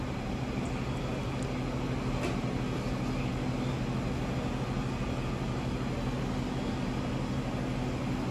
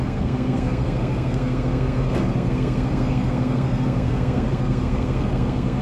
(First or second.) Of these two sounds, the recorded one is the first